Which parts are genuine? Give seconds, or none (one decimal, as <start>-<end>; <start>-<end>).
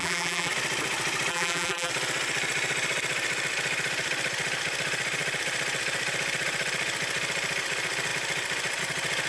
0.5-1.3; 1.9-9.3